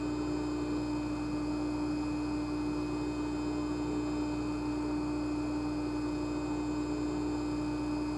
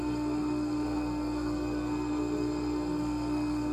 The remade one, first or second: second